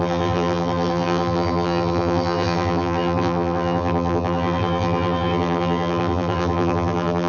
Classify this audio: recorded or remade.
remade